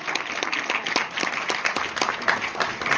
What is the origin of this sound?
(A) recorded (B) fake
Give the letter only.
A